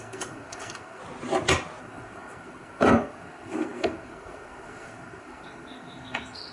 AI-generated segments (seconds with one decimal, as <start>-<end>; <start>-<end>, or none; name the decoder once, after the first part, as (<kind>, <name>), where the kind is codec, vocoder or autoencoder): 0.0-1.0 (codec, SNAC); 1.8-6.5